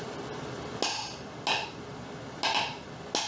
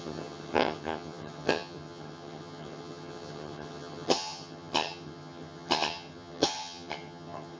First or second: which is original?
first